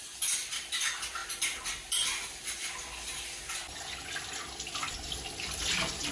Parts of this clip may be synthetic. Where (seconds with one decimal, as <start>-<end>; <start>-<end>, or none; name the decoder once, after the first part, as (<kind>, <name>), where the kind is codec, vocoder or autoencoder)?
none